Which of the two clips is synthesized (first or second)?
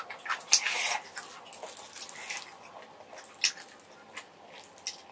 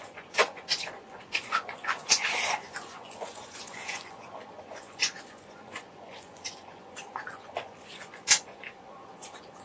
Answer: second